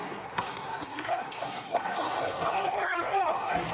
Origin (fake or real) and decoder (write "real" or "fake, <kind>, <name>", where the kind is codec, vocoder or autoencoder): fake, codec, SNAC